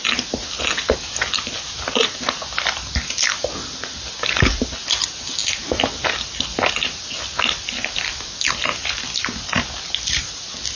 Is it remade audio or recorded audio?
recorded